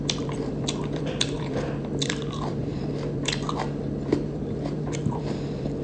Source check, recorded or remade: remade